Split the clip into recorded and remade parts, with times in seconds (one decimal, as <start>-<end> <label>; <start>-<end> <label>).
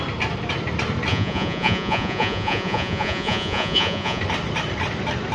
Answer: 0.0-1.1 recorded; 1.1-4.2 remade; 4.2-5.3 recorded